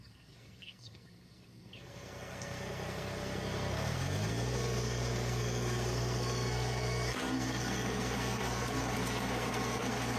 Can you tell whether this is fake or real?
fake